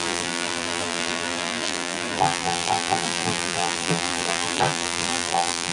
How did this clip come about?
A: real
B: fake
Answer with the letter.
B